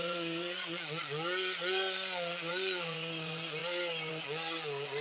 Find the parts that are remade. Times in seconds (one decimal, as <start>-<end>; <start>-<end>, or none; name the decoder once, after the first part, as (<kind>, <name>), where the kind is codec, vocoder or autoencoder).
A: 0.0-3.6 (vocoder, Vocos); 4.1-5.0